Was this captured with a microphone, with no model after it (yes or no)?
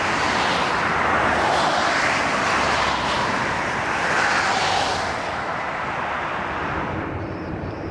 no